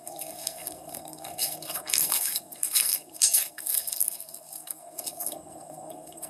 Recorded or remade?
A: remade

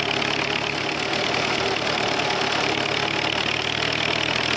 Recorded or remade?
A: recorded